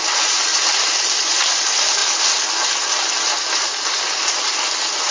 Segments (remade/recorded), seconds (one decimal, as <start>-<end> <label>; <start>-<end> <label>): 0.0-5.1 recorded